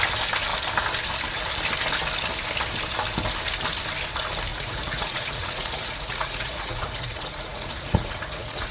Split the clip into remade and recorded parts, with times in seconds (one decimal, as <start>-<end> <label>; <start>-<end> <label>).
0.0-4.5 recorded; 4.5-8.7 remade

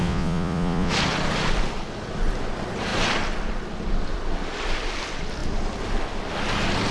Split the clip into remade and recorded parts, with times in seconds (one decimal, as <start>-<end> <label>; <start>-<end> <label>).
0.0-0.9 remade; 0.9-6.9 recorded

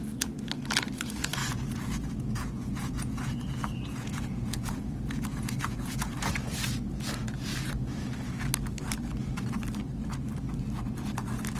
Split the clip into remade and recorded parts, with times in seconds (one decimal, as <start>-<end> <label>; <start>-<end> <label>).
0.0-1.4 recorded; 1.4-6.3 remade; 6.3-11.6 recorded

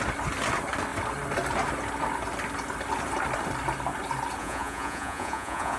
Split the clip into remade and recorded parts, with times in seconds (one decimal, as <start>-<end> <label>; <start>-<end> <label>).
0.0-4.4 recorded; 4.4-5.8 remade

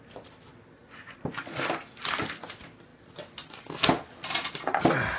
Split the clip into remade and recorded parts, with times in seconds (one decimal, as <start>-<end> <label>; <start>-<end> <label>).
0.0-5.2 recorded

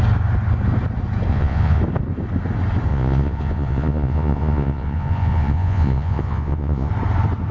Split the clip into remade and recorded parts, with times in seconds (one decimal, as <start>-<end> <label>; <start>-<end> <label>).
0.0-1.3 recorded; 1.3-1.8 remade; 1.8-2.9 recorded; 2.9-6.9 remade; 6.9-7.5 recorded